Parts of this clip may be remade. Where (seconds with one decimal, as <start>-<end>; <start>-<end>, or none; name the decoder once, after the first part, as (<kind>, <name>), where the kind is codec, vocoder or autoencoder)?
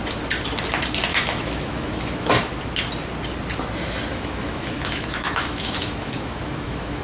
1.1-2.3 (autoencoder, DAC-VAE); 4.1-7.0